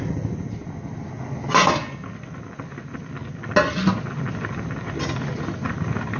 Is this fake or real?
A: real